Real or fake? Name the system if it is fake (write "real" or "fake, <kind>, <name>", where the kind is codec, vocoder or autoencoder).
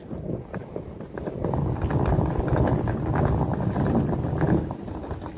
real